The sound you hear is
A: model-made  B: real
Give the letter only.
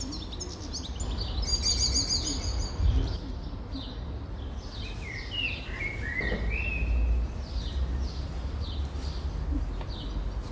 B